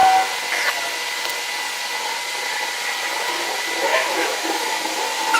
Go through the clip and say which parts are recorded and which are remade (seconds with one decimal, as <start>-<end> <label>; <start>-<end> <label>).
0.0-3.9 recorded; 3.9-4.8 remade; 4.8-5.4 recorded

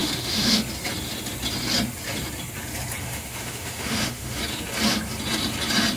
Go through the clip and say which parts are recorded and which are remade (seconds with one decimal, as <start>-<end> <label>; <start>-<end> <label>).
0.0-0.6 remade; 0.6-3.0 recorded; 3.0-4.4 remade; 4.4-6.0 recorded